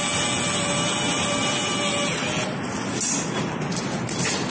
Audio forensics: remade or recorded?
recorded